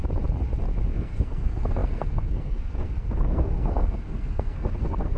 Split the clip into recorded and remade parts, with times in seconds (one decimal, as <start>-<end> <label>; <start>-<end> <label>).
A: 0.0-0.9 recorded; 0.9-5.2 remade